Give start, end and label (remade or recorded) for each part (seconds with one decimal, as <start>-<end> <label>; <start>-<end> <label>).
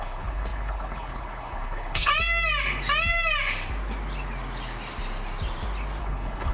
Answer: 0.0-2.1 remade; 2.1-6.0 recorded; 6.0-6.5 remade